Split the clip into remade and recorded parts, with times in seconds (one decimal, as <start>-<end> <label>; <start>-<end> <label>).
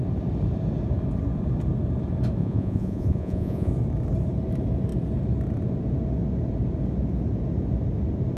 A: 0.0-2.4 recorded; 2.4-3.7 remade; 3.7-8.4 recorded